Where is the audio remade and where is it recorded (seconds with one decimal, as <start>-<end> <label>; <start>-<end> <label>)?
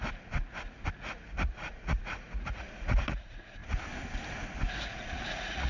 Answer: 0.0-1.0 recorded; 1.0-3.6 remade; 3.6-4.7 recorded; 4.7-5.7 remade